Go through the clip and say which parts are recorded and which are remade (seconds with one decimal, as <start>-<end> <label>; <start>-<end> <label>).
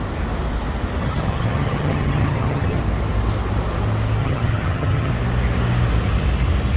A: 0.0-1.0 recorded; 1.0-2.8 remade; 2.8-4.2 recorded; 4.2-5.1 remade; 5.1-6.8 recorded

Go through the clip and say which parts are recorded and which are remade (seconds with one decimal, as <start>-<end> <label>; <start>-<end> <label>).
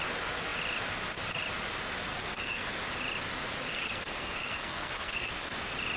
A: 0.0-2.1 recorded; 2.1-2.7 remade; 2.7-3.7 recorded; 3.7-5.3 remade; 5.3-6.0 recorded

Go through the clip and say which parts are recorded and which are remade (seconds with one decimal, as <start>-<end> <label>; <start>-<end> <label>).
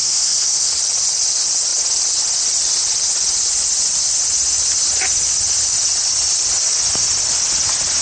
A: 0.0-0.8 remade; 0.8-8.0 recorded